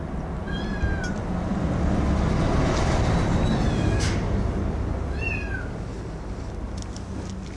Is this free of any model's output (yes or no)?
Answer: yes